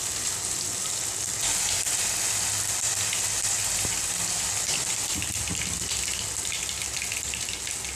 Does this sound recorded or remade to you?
recorded